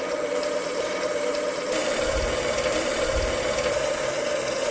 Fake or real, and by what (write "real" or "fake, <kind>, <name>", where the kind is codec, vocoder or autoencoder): fake, vocoder, BigVGAN v2